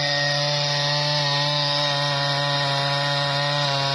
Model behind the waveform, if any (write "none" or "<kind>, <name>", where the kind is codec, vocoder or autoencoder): none